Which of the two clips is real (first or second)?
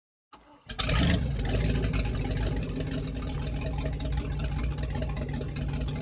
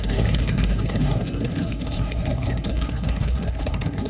first